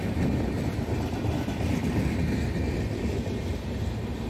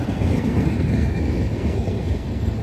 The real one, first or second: first